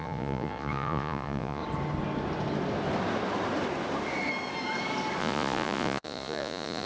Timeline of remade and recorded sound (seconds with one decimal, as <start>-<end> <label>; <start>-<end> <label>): 0.0-1.6 remade; 1.6-5.2 recorded; 5.2-6.9 remade